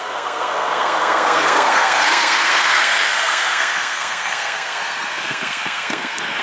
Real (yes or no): no